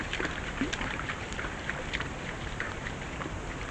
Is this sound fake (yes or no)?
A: yes